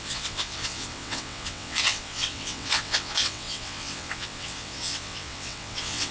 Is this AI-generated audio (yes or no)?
yes